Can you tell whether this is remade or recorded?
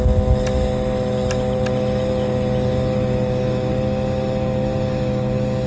recorded